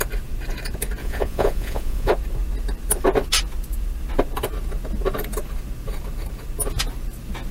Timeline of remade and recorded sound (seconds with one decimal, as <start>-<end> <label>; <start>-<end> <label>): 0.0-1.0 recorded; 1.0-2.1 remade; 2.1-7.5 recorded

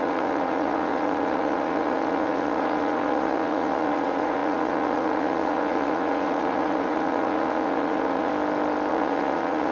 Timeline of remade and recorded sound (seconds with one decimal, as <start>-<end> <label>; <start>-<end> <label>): 0.0-8.3 remade; 8.3-8.9 recorded; 8.9-9.7 remade

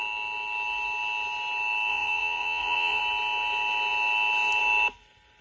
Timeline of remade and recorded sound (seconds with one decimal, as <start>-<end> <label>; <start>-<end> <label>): 0.0-1.9 recorded; 1.9-3.0 remade; 3.0-5.4 recorded

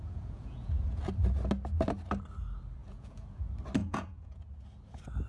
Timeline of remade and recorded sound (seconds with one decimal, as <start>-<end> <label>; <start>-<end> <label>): 0.0-1.0 remade; 1.0-2.8 recorded; 2.8-3.4 remade; 3.4-3.8 recorded; 3.8-4.4 remade; 4.4-5.3 recorded